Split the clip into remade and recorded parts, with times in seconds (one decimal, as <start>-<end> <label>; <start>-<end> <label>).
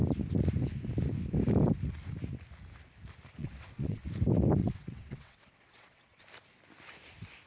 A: 0.0-3.4 recorded; 3.4-4.1 remade; 4.1-4.6 recorded; 4.6-6.2 remade; 6.2-7.5 recorded